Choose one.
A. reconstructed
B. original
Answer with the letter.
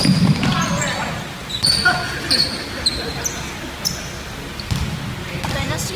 B